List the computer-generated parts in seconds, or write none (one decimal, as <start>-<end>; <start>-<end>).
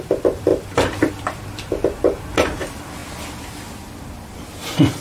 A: 0.0-3.0